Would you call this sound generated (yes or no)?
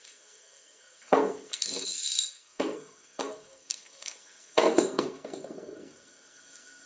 yes